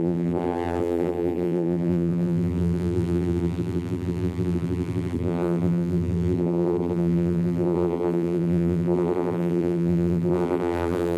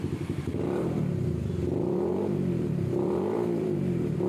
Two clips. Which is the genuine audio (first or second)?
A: second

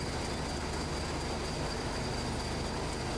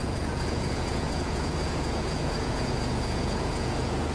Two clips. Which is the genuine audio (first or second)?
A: first